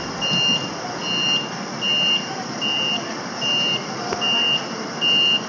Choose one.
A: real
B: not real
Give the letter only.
A